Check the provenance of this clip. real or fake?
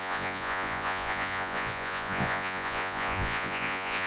fake